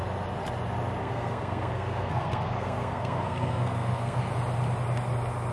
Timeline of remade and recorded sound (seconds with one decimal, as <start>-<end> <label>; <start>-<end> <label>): 0.0-1.0 recorded; 1.0-4.3 remade; 4.3-5.5 recorded